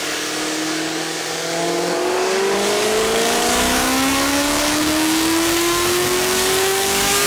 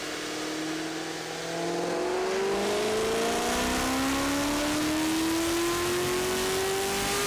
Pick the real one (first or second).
second